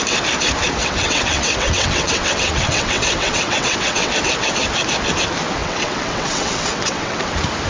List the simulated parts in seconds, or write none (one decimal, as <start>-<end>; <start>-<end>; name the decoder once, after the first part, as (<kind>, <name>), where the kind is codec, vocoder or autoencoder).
0.8-4.1 (vocoder, WaveNeXt); 5.6-7.3